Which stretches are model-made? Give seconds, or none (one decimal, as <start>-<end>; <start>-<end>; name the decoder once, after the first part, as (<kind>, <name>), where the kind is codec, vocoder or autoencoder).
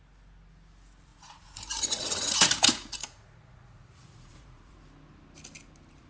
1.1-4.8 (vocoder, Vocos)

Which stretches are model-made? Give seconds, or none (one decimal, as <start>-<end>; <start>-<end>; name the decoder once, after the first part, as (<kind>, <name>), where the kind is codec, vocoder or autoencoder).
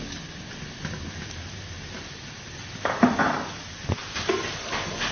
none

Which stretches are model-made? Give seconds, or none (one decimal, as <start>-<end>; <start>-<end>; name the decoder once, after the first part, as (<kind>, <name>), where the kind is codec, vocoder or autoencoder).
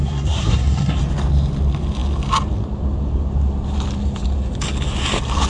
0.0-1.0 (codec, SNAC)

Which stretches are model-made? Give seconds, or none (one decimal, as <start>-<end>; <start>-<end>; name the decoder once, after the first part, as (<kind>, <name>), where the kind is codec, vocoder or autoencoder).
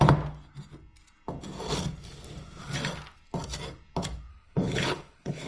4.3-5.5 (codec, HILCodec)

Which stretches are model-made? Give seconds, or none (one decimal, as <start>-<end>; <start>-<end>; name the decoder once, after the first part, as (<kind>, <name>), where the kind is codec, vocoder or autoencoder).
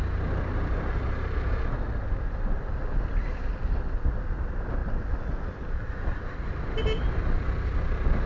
none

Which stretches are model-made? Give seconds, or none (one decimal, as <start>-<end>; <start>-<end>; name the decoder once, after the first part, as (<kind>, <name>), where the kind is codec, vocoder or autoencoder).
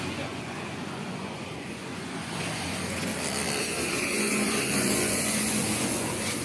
0.0-3.1 (vocoder, Vocos); 3.6-6.4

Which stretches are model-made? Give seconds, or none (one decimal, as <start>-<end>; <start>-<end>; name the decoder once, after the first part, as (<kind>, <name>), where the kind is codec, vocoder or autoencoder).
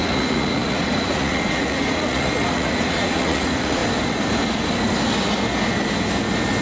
0.0-3.8 (vocoder, Vocos)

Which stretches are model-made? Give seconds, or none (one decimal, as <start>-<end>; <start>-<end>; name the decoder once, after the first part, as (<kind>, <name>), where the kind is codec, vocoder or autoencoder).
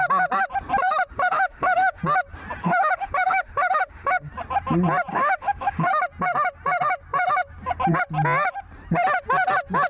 1.1-2.0 (autoencoder, DAC-VAE); 2.6-4.3; 5.1-5.9